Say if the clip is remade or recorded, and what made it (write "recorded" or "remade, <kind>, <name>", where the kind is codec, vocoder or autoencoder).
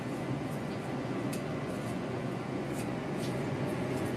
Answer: remade, vocoder, Vocos